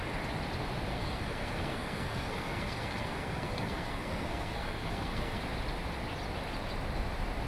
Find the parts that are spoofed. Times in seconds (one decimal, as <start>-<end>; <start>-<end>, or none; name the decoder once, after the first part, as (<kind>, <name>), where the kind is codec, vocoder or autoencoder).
0.9-5.4 (codec, SNAC)